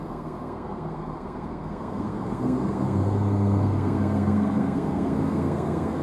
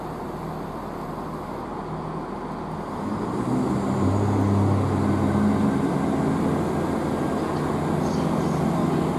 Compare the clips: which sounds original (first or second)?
second